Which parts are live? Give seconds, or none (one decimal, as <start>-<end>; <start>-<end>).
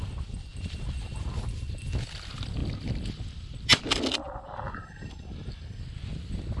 0.0-0.5; 1.2-2.6; 3.8-6.6